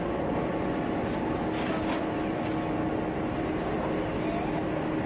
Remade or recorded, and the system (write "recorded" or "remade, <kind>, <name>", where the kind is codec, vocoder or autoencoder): recorded